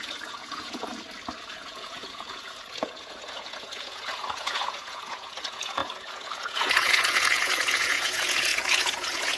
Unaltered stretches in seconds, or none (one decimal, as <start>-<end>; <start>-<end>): 0.9-1.5